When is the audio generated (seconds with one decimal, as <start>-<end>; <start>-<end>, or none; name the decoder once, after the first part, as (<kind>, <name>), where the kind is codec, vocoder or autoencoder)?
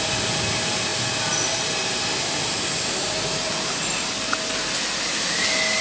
none